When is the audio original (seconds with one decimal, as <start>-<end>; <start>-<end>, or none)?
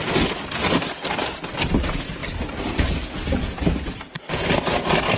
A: 0.0-5.2